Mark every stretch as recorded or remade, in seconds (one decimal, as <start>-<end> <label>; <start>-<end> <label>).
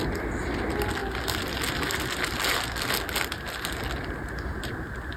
0.0-5.2 recorded